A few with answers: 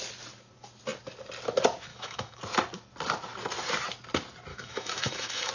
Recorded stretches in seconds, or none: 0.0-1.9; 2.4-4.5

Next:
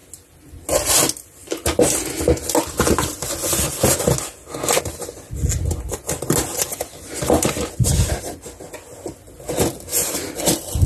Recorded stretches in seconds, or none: 0.0-9.9

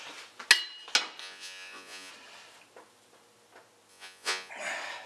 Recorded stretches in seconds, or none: 0.0-1.2; 2.1-3.9; 4.5-5.1

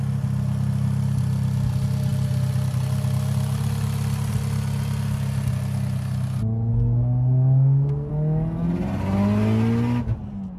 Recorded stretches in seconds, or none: 0.0-6.7; 8.1-10.6

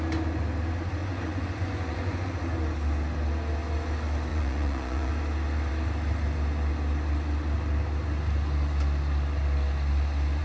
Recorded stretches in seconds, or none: 0.0-1.0; 2.3-4.3; 5.1-10.4